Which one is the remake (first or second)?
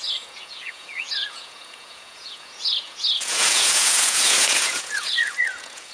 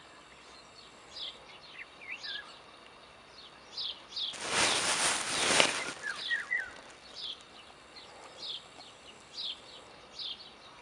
first